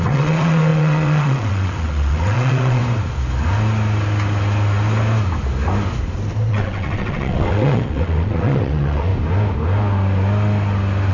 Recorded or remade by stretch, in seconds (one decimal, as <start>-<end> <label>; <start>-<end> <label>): 0.0-2.8 remade; 2.8-6.5 recorded; 6.5-9.1 remade; 9.1-11.1 recorded